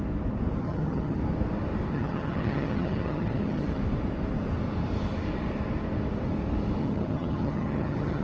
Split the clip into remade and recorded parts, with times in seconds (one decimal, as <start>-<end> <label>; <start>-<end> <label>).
0.0-0.6 recorded; 0.6-1.2 remade; 1.2-1.9 recorded; 1.9-3.8 remade; 3.8-6.8 recorded; 6.8-8.2 remade

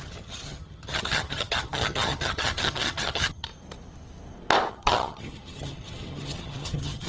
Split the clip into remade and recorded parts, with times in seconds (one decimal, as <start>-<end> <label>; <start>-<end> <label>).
0.0-3.5 remade; 3.5-4.7 recorded; 4.7-7.1 remade

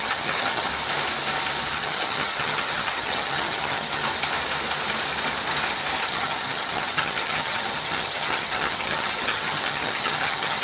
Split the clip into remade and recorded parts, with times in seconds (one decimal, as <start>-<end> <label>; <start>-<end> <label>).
0.0-0.7 remade; 0.7-1.7 recorded; 1.7-4.0 remade; 4.0-6.0 recorded; 6.0-10.6 remade

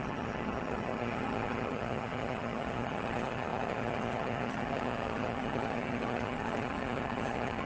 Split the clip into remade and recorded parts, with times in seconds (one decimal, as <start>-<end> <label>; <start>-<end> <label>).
0.0-7.7 remade

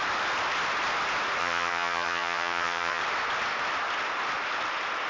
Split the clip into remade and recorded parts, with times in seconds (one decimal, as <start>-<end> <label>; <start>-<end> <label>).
0.0-1.4 recorded; 1.4-3.0 remade; 3.0-5.1 recorded